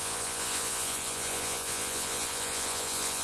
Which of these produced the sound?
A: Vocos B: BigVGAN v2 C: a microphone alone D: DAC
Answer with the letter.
A